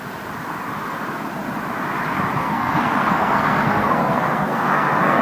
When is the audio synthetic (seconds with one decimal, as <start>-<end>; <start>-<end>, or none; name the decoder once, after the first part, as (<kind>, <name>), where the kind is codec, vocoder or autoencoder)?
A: 2.4-5.2 (codec, SNAC)